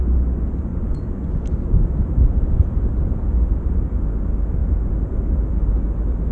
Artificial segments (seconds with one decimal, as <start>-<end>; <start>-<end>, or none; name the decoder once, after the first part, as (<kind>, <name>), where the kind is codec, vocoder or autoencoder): 0.7-1.3 (vocoder, Vocos)